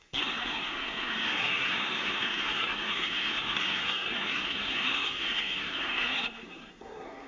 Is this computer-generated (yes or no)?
yes